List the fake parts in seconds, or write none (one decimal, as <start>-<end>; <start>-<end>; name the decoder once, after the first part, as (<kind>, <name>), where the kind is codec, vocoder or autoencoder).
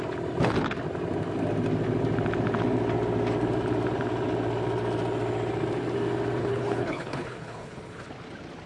6.4-8.1 (codec, HILCodec)